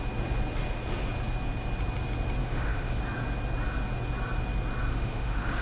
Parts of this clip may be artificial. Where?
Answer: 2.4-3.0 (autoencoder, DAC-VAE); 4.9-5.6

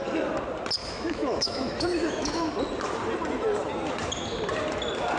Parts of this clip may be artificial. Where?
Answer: 0.8-2.5 (autoencoder, DAC-VAE)

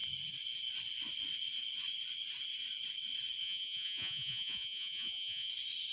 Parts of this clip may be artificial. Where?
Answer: 3.4-5.5 (vocoder, Vocos)

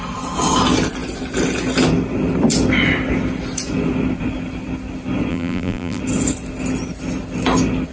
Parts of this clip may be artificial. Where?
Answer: 5.3-6.0 (vocoder, BigVGAN v2)

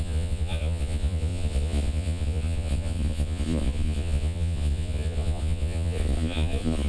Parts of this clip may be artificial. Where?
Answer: 0.0-6.9 (vocoder, Vocos)

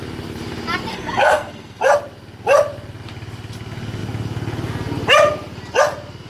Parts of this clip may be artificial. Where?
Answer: 0.9-1.8 (codec, SNAC)

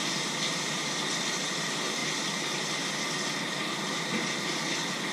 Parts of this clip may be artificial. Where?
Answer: none